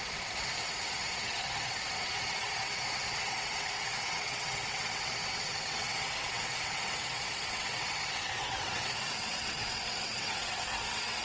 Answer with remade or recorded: remade